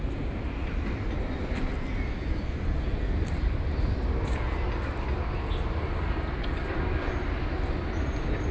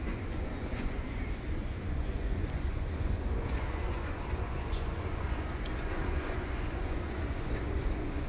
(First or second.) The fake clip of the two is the second